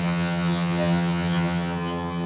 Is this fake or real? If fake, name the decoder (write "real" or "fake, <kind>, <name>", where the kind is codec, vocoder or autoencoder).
fake, vocoder, HiFi-GAN